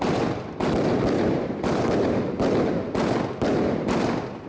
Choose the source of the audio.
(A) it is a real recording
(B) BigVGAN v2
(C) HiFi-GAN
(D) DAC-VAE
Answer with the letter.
A